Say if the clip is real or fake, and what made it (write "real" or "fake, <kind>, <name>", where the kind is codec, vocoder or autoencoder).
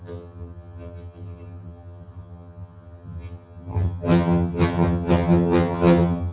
fake, vocoder, HiFi-GAN